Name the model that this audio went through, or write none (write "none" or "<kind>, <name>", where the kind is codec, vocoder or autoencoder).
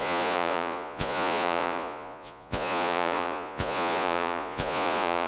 vocoder, Vocos